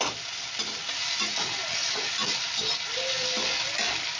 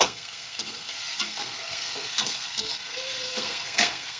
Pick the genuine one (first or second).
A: first